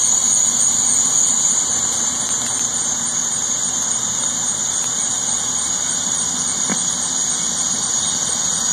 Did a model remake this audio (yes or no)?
no